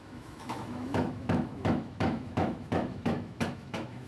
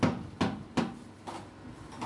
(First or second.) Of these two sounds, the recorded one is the second